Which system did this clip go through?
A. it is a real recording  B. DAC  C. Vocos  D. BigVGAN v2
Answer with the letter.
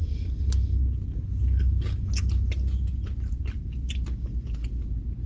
A